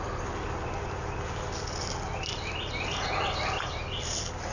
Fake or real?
real